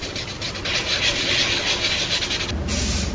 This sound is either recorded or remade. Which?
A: recorded